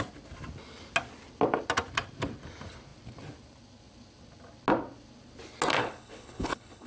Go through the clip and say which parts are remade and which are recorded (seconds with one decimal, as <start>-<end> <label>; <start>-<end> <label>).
0.0-5.8 recorded; 5.8-6.9 remade